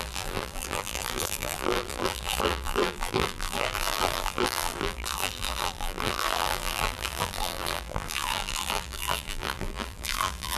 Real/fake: fake